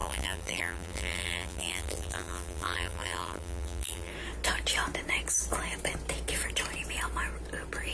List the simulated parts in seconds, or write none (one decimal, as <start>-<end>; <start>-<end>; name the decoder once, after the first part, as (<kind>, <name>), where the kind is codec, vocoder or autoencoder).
0.0-4.1 (vocoder, BigVGAN v2)